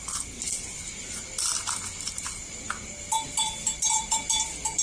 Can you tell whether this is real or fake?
real